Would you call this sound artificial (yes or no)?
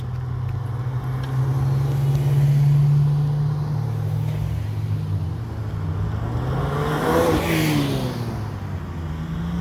no